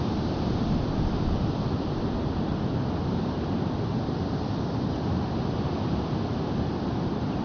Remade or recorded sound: recorded